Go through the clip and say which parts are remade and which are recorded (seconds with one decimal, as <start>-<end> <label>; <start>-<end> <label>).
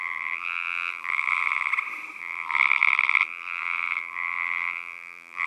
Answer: 0.0-1.7 remade; 1.7-2.2 recorded; 2.2-5.5 remade